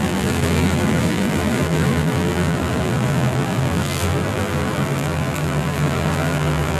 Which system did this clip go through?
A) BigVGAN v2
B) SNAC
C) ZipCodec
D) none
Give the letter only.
A